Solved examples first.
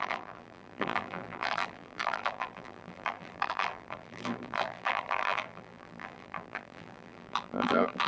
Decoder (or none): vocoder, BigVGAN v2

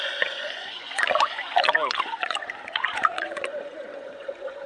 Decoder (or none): vocoder, Vocos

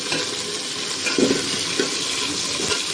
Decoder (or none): none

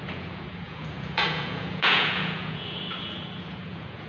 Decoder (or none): vocoder, Vocos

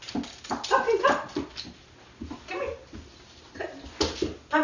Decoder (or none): none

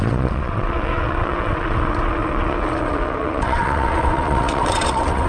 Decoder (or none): vocoder, WaveNeXt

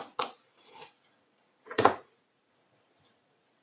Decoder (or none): vocoder, Vocos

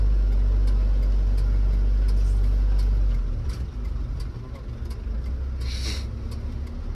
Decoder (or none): none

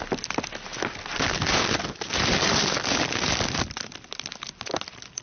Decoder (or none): none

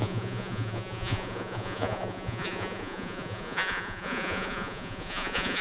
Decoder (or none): vocoder, Vocos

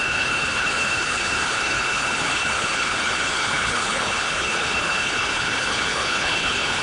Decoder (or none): codec, HILCodec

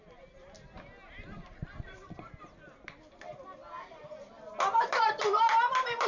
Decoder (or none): none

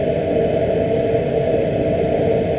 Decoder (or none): none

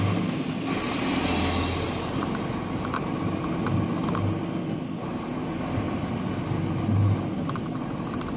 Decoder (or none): none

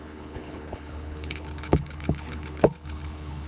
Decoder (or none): codec, HILCodec